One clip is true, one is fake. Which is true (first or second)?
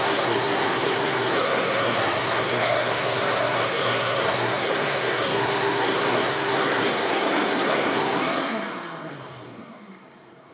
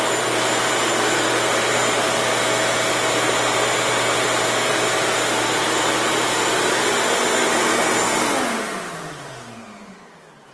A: second